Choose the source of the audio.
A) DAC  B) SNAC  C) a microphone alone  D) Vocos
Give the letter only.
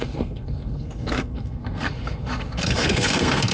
B